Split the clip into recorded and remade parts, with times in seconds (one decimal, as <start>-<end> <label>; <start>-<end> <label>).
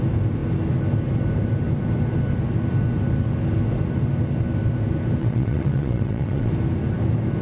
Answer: 0.0-5.2 recorded; 5.2-6.5 remade; 6.5-7.4 recorded